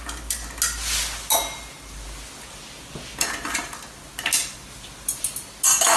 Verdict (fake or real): real